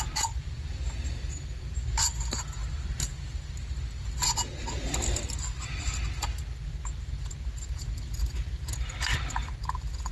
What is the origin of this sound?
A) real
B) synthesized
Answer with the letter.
A